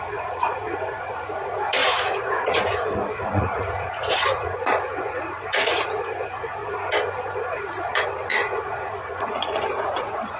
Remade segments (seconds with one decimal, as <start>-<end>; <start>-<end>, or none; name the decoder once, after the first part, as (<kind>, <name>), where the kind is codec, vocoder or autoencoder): 0.0-6.6 (vocoder, Vocos); 7.2-10.4